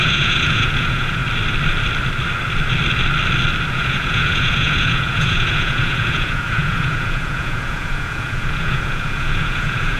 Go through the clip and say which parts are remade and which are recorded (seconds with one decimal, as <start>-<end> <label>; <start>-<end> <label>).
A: 0.0-1.2 remade; 1.2-3.7 recorded; 3.7-10.0 remade